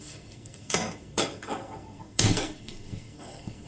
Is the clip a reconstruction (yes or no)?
yes